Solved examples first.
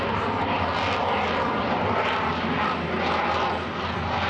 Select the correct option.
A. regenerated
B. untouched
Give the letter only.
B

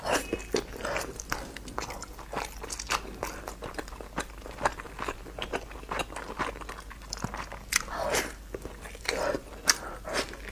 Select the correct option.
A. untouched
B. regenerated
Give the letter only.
A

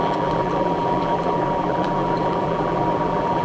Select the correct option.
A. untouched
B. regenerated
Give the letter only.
B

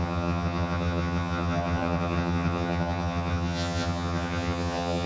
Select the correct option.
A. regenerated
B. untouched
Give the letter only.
A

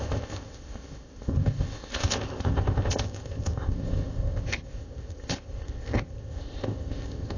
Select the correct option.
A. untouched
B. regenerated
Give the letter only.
B